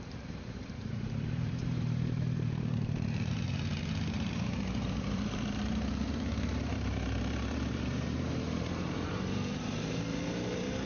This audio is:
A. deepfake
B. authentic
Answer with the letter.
A